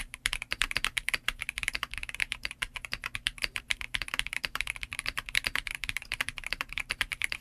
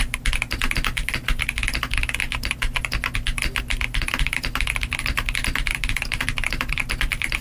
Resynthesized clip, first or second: first